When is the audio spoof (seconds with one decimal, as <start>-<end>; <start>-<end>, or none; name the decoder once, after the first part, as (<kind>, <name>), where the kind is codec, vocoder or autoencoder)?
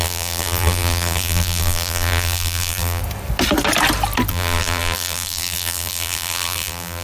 0.0-3.0 (vocoder, BigVGAN v2); 4.3-7.0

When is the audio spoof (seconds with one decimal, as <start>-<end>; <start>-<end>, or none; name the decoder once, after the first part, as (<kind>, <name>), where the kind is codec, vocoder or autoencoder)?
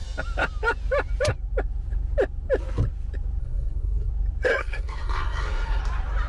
3.4-4.1 (codec, SNAC); 4.6-5.8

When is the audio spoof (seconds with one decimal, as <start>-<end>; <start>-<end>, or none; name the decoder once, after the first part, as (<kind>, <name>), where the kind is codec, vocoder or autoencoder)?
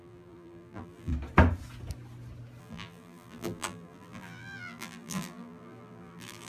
0.0-1.1 (vocoder, BigVGAN v2); 2.6-6.5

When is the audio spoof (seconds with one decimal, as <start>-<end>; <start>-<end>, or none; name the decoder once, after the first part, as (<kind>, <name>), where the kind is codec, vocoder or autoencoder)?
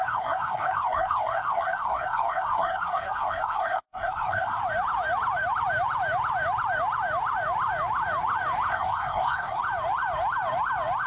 0.0-4.6 (codec, SNAC); 8.7-9.6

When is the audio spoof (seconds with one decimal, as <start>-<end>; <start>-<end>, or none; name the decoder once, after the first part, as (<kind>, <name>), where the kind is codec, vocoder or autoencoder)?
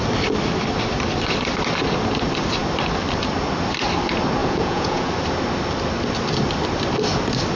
4.4-5.1 (vocoder, Vocos)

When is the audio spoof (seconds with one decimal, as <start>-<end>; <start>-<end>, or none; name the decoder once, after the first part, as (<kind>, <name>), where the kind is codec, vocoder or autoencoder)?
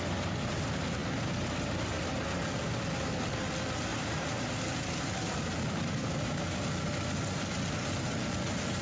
3.9-4.5 (vocoder, BigVGAN v2)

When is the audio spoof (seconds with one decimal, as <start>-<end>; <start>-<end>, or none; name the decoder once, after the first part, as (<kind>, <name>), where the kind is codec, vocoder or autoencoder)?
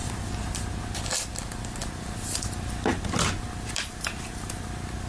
none